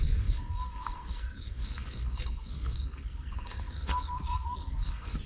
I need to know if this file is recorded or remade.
remade